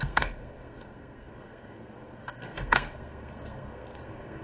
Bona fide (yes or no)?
no